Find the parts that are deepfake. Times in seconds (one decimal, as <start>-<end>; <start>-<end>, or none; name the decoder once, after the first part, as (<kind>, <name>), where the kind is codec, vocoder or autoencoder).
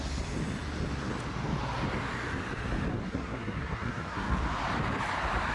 2.9-4.4 (codec, SNAC)